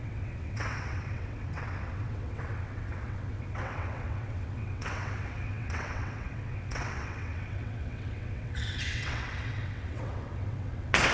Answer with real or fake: fake